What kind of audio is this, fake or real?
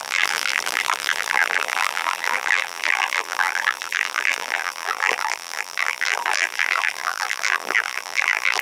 fake